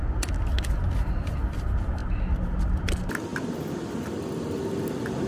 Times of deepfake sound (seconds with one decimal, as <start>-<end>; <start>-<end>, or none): none

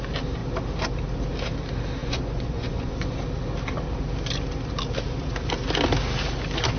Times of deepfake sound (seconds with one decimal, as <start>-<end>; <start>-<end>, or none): 2.0-3.1

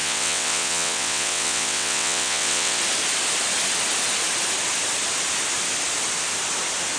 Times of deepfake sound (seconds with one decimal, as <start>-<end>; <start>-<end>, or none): 0.0-2.8

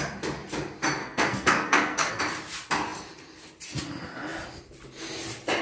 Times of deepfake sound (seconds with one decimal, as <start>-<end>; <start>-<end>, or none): 1.0-2.2

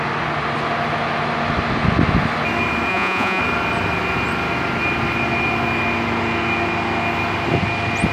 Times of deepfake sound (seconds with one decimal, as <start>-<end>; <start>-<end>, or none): 2.9-3.4

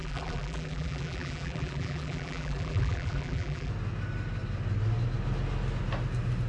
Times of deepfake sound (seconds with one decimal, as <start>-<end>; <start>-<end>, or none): 0.0-3.7

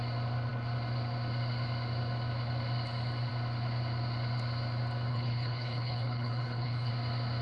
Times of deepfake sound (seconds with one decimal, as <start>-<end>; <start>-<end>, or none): 5.1-6.9

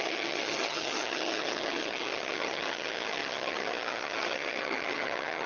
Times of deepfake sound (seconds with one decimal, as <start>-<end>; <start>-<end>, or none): 0.0-5.5